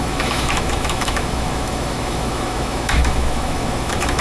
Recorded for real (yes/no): no